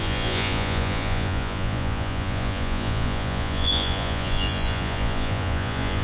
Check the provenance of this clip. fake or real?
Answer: fake